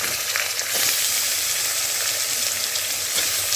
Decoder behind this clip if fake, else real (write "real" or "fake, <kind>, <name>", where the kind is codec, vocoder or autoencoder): real